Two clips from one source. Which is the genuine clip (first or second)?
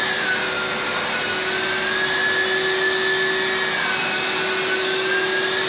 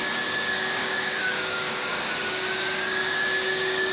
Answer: first